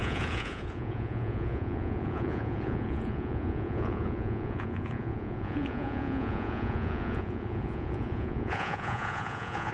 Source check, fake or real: fake